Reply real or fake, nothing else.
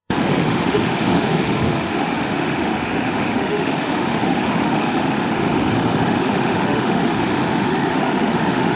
fake